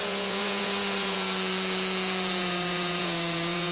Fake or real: fake